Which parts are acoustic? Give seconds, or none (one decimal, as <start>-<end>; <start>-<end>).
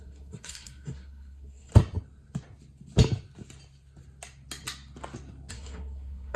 1.7-5.5